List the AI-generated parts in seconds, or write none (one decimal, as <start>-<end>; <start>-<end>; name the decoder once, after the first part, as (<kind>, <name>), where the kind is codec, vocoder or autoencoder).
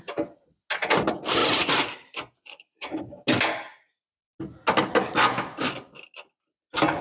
1.4-3.0 (vocoder, BigVGAN v2)